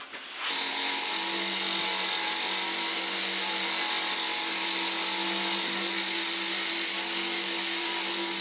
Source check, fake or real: real